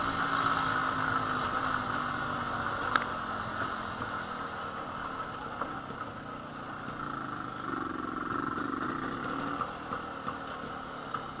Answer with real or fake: real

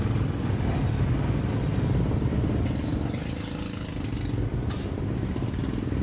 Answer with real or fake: real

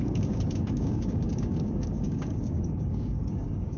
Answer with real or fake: fake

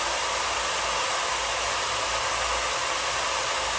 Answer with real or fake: real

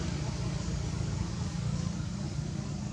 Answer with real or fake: fake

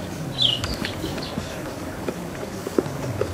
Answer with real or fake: fake